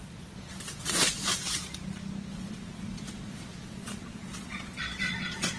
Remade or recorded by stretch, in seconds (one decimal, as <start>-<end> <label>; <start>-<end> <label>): 0.0-1.3 remade; 1.3-2.3 recorded; 2.3-5.6 remade